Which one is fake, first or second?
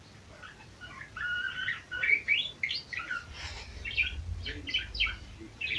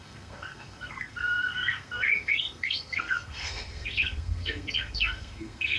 second